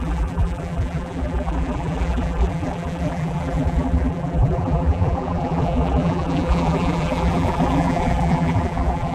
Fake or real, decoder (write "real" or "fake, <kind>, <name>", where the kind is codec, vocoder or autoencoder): fake, vocoder, BigVGAN v2